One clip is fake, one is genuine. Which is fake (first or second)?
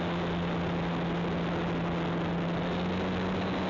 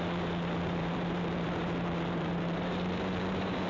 second